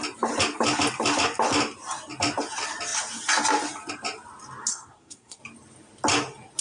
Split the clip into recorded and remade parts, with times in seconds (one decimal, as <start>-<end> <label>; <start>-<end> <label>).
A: 0.0-4.7 recorded; 4.7-5.4 remade; 5.4-6.6 recorded